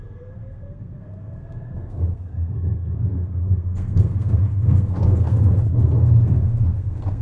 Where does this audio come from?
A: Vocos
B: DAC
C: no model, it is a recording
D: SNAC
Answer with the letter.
D